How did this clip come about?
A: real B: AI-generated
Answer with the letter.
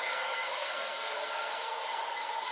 B